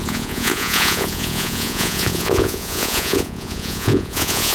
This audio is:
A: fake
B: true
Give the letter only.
A